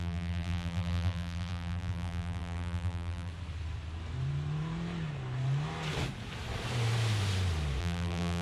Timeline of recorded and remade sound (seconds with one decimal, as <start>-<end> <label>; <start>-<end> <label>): 0.0-3.3 remade; 3.3-7.8 recorded; 7.8-8.4 remade